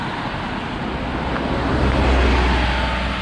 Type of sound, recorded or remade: recorded